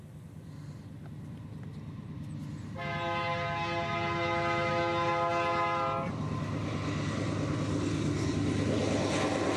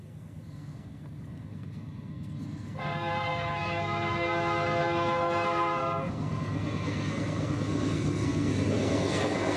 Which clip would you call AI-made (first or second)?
second